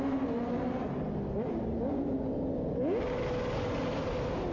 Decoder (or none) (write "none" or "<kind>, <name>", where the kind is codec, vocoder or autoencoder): none